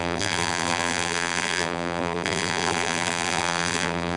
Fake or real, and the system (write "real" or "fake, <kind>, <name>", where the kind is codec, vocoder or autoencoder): fake, vocoder, BigVGAN v2